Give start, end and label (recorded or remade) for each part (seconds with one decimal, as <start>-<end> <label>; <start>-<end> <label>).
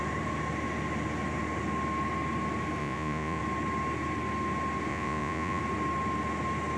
0.0-2.8 recorded; 2.8-3.4 remade; 3.4-4.9 recorded; 4.9-5.6 remade; 5.6-6.8 recorded